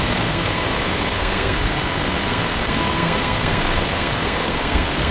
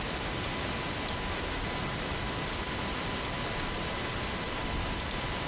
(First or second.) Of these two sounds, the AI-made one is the first